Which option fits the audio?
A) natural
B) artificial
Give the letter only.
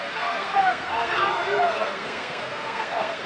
B